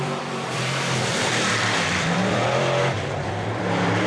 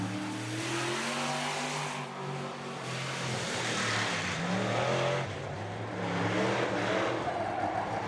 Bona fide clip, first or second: second